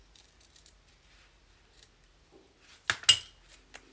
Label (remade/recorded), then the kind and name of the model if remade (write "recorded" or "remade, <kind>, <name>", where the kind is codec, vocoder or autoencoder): recorded